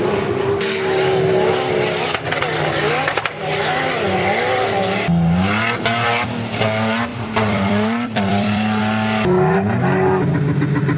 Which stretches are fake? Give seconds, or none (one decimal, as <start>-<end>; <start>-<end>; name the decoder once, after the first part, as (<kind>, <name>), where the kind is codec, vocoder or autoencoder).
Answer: 7.1-8.8 (vocoder, BigVGAN v2)